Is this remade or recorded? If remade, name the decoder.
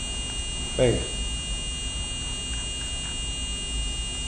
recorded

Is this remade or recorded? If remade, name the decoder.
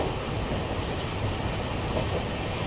recorded